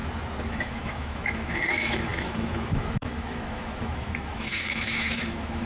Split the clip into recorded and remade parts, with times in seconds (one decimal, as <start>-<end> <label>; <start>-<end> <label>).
0.0-0.5 recorded; 0.5-5.7 remade

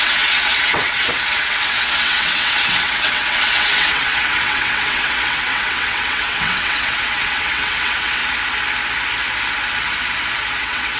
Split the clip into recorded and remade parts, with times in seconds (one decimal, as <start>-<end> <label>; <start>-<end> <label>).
0.0-8.2 remade; 8.2-10.6 recorded; 10.6-11.0 remade

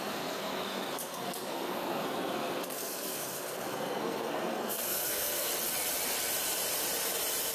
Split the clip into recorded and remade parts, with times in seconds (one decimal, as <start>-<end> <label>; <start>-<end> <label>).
0.0-5.5 remade; 5.5-7.5 recorded

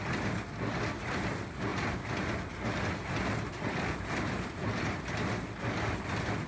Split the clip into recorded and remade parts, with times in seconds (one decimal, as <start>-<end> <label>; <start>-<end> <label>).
0.0-1.7 remade; 1.7-3.5 recorded; 3.5-6.5 remade

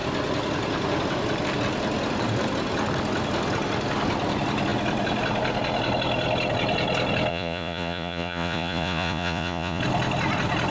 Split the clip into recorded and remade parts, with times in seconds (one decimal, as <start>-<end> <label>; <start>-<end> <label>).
0.0-7.3 recorded; 7.3-9.8 remade; 9.8-10.7 recorded

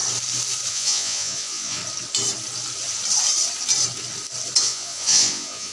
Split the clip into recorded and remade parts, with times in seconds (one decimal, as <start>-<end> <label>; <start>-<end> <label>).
0.0-0.7 recorded; 0.7-1.8 remade; 1.8-4.6 recorded; 4.6-5.7 remade